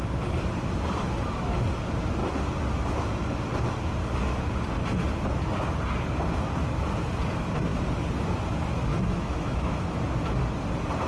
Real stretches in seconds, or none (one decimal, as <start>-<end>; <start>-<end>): 0.0-8.9; 10.0-11.1